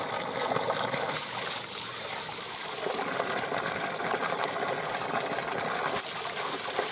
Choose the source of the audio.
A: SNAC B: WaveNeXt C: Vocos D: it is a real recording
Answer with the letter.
D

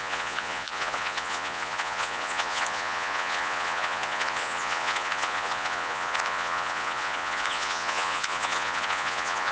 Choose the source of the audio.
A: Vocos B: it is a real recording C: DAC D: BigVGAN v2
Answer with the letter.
A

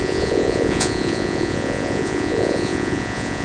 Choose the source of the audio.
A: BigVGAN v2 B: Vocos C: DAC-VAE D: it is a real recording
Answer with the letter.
B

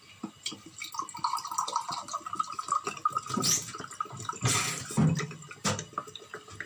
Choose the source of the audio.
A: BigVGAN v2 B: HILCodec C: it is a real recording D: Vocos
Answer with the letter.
C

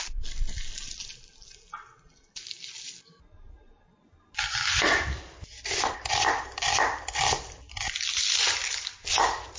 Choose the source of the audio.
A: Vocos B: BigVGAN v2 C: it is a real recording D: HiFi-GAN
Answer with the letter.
B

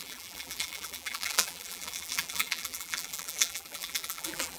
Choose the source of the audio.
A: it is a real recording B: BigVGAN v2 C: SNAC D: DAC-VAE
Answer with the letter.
B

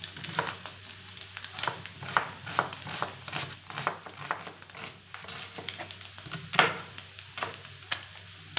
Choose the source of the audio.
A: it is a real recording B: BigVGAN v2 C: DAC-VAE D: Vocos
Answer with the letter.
A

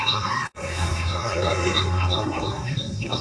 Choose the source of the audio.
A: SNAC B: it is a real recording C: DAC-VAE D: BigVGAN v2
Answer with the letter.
A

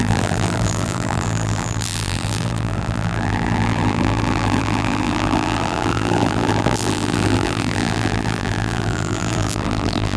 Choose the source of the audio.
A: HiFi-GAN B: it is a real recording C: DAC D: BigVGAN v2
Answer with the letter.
D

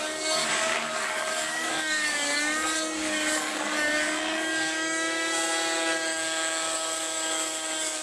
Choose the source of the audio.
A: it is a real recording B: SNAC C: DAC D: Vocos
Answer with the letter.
C